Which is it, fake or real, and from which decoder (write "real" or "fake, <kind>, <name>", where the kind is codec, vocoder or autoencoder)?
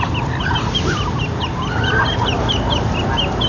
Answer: real